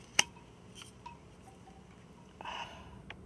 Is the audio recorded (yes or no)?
yes